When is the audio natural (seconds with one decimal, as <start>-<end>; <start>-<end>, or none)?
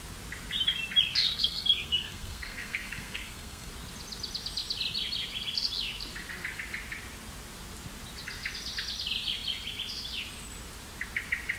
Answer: 0.0-1.1; 3.7-11.6